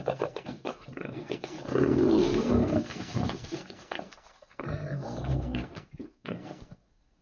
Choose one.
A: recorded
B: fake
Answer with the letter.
B